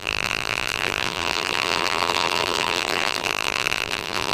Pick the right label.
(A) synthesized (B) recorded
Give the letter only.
A